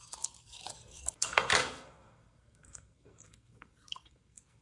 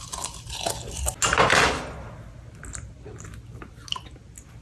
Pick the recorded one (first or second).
second